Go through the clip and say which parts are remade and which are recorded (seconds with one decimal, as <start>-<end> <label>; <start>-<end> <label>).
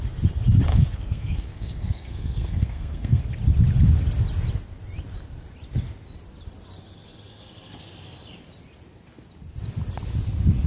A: 0.0-0.7 recorded; 0.7-3.2 remade; 3.2-10.7 recorded